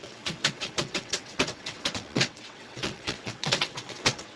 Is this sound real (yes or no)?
no